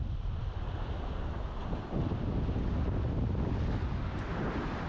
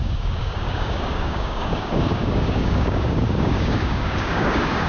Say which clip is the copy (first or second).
second